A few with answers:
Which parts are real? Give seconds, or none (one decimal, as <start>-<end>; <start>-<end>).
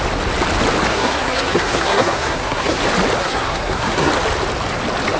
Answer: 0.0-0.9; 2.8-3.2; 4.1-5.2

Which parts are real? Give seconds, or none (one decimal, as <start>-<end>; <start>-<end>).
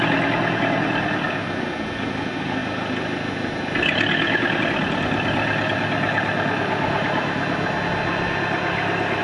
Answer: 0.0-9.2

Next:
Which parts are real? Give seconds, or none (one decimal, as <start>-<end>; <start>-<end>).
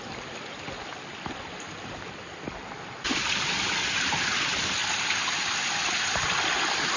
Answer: 0.0-7.0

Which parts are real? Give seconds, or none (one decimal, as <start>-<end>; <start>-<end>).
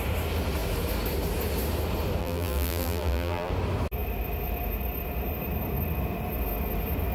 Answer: 0.0-2.2; 3.5-7.1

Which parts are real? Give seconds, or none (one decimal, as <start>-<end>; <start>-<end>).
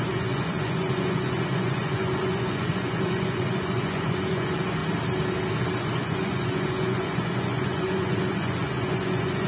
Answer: 4.8-5.8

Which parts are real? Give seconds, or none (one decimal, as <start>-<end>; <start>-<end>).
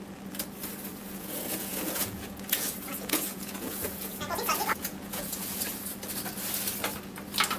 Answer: 0.0-1.0; 5.6-7.6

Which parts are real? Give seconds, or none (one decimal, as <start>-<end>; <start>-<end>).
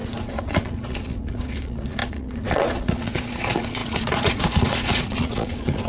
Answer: none